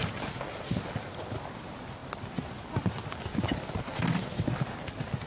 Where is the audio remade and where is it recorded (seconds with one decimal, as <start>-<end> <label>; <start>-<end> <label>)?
0.0-5.3 recorded